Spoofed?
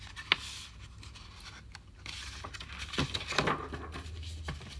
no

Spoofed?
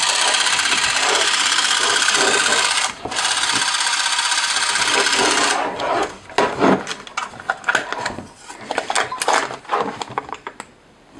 no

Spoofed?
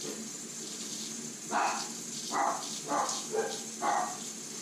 no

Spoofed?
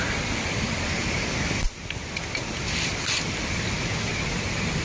yes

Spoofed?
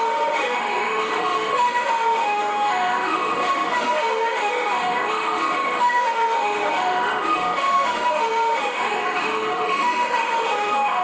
yes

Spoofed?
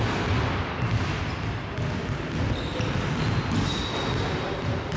no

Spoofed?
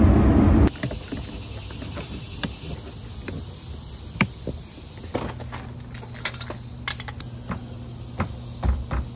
no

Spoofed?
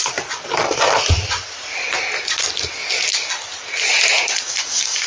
no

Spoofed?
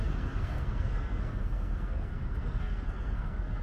yes